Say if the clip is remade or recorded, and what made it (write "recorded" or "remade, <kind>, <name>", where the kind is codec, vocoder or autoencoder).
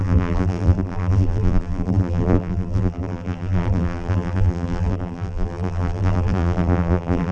remade, vocoder, BigVGAN v2